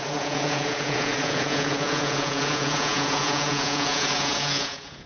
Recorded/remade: remade